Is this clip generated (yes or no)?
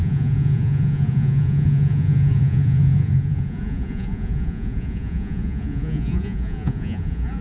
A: yes